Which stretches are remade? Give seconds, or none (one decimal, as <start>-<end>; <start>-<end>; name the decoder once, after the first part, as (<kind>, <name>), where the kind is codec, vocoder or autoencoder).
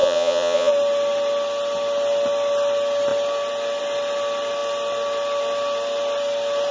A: 0.0-0.7 (vocoder, Vocos)